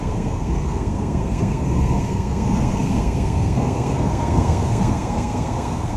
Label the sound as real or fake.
fake